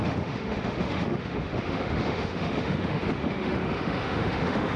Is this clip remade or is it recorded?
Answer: remade